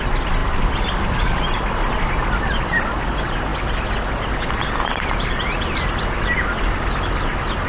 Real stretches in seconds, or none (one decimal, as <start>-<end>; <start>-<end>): 0.0-7.7